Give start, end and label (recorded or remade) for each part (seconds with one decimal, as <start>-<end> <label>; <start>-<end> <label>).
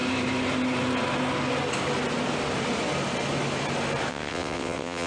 0.0-4.1 recorded; 4.1-5.1 remade